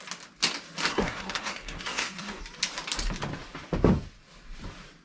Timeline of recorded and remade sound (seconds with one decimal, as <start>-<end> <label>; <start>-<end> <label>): 0.0-0.9 recorded; 0.9-2.4 remade; 2.4-5.0 recorded